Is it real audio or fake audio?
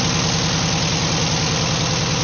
real